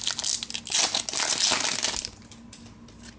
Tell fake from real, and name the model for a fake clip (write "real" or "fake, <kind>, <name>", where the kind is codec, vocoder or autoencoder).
real